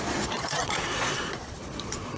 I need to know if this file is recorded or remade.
remade